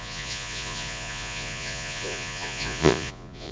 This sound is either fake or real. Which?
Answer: fake